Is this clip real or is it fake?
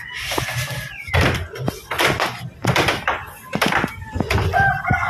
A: real